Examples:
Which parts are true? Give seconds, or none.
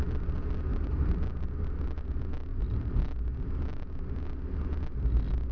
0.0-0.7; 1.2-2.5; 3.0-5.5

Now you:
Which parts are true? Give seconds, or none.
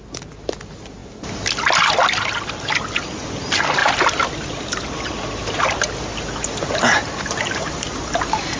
0.0-8.6